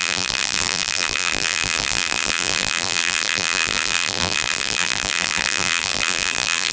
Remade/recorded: remade